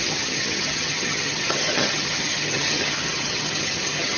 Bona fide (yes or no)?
no